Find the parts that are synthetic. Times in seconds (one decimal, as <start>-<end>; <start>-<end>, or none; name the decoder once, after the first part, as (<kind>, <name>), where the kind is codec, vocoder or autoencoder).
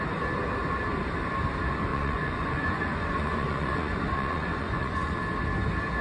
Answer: 1.9-5.2 (vocoder, Vocos)